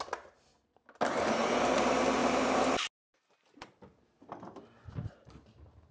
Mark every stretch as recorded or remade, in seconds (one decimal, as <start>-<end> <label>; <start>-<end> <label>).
0.0-5.9 recorded